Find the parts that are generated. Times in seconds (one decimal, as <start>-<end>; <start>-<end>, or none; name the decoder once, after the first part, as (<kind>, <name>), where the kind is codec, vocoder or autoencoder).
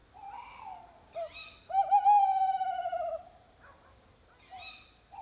none